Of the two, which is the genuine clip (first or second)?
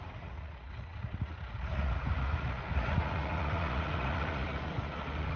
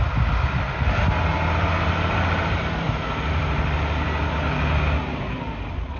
second